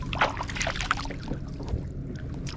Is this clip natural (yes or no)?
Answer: yes